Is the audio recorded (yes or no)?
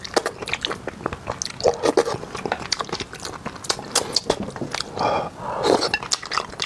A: yes